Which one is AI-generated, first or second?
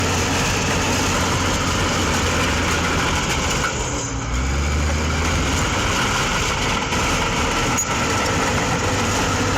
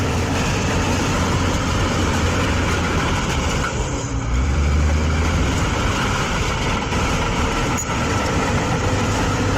second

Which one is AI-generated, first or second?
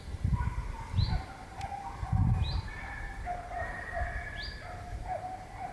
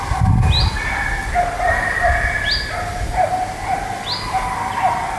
first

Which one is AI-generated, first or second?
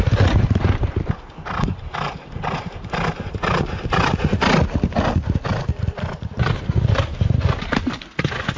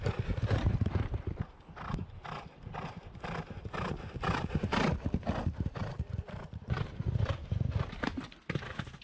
second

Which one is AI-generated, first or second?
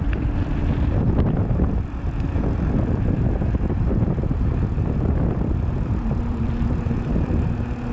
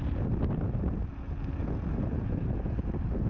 first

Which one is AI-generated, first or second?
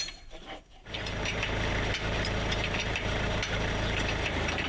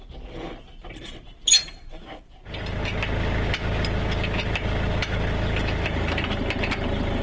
first